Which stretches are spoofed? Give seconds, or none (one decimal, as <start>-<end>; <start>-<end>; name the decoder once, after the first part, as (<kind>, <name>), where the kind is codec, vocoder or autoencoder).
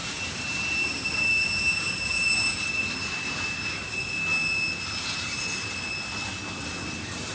0.0-3.3 (vocoder, BigVGAN v2)